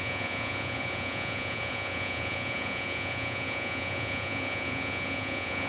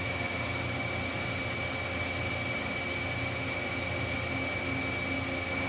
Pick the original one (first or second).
second